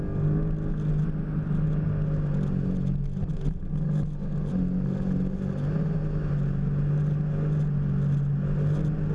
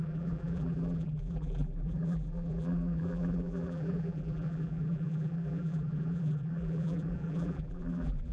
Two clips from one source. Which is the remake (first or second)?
second